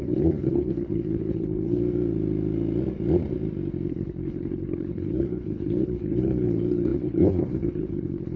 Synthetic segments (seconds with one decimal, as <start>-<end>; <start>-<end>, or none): 0.0-1.8; 3.9-8.4